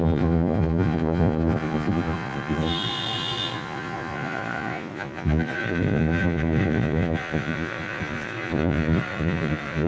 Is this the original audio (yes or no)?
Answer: no